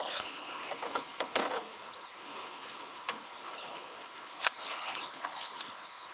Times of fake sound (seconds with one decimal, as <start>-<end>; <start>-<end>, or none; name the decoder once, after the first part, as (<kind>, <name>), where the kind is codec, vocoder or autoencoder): 0.0-6.1 (codec, HILCodec)